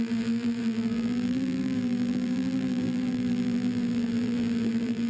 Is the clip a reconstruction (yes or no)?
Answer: yes